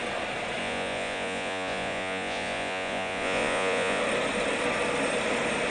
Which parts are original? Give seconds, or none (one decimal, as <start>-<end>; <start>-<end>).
0.0-0.6; 4.0-5.7